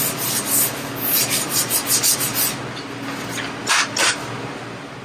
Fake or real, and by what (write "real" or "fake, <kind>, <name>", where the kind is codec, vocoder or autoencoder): real